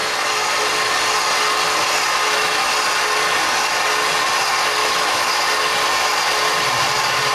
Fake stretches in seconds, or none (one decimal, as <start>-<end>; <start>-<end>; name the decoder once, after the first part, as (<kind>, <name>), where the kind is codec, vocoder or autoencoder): 2.2-2.7 (autoencoder, DAC-VAE); 4.8-5.4